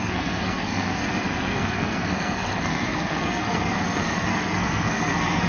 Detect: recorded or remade remade